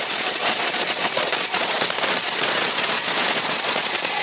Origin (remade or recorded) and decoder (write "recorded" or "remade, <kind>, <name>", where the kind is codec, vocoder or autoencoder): remade, vocoder, Vocos